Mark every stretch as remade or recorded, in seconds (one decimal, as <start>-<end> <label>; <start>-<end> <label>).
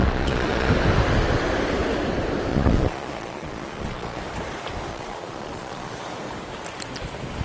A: 0.0-0.7 remade; 0.7-2.5 recorded; 2.5-4.2 remade; 4.2-4.9 recorded; 4.9-5.9 remade; 5.9-7.4 recorded